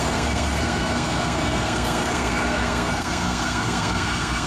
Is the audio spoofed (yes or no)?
yes